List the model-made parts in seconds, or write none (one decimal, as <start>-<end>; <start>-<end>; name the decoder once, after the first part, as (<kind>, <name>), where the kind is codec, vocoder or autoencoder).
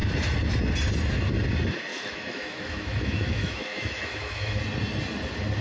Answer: 1.9-4.6 (autoencoder, DAC-VAE)